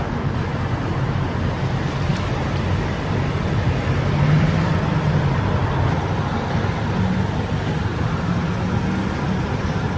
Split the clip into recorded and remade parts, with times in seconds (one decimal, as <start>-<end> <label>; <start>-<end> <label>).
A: 0.0-2.1 recorded; 2.1-5.6 remade; 5.6-10.0 recorded